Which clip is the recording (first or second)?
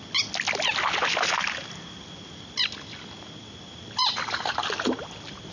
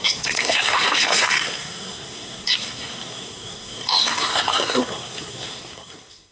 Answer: first